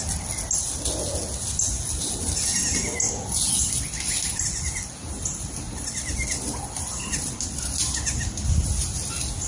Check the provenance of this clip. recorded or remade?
recorded